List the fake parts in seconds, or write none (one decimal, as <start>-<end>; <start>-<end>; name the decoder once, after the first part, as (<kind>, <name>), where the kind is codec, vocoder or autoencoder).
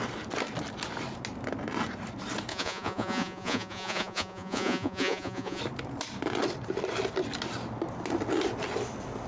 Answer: 2.5-5.6 (vocoder, Vocos)